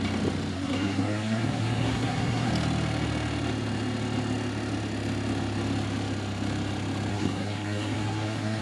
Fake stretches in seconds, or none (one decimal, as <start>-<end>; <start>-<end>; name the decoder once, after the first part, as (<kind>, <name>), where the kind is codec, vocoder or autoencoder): 0.5-2.5 (codec, SNAC); 7.1-8.6